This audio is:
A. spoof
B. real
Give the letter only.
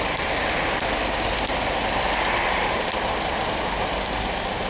B